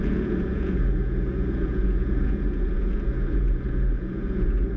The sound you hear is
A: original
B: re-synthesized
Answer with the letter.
B